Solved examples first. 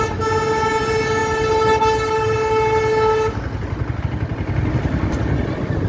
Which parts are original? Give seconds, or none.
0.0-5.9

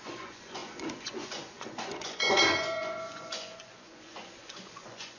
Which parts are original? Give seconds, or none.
none

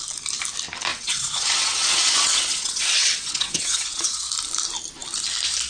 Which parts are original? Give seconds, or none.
0.0-0.9; 4.3-5.7